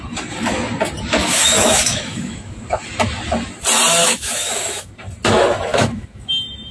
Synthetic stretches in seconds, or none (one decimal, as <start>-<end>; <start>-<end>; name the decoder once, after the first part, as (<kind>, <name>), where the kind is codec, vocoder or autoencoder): 1.2-2.6 (autoencoder, DAC-VAE); 4.0-4.9; 5.7-6.3